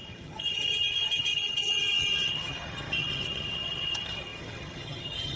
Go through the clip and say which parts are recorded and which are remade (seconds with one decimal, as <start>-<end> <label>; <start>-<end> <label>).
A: 0.0-5.4 remade